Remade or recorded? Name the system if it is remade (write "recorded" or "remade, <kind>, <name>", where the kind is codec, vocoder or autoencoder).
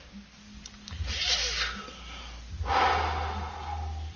recorded